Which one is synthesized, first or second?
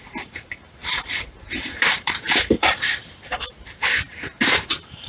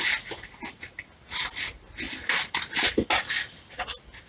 first